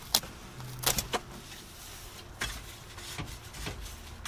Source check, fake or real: real